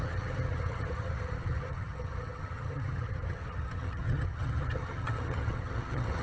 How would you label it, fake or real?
fake